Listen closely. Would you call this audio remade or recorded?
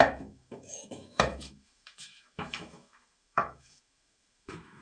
remade